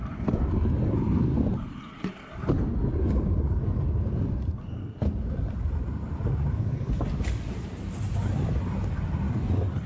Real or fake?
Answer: real